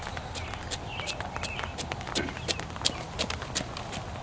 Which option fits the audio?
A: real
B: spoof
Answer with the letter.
A